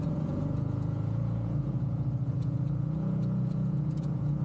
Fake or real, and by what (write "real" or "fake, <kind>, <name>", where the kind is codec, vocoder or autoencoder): fake, vocoder, Vocos